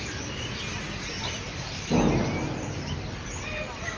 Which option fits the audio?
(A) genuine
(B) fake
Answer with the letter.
A